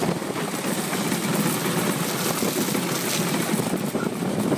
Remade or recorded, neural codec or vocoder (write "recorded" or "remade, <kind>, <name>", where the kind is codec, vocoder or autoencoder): recorded